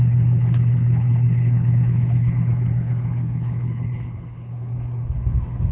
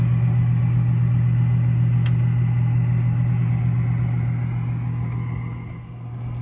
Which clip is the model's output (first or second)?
first